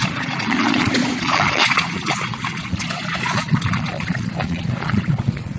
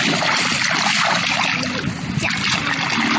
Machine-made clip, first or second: first